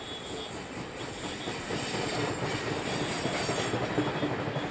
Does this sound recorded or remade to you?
recorded